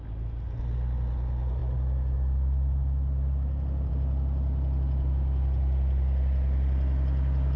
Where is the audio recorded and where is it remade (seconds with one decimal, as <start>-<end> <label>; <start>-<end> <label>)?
0.0-7.6 recorded